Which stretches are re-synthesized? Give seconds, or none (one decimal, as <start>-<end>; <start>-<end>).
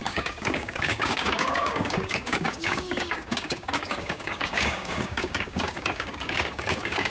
0.0-7.1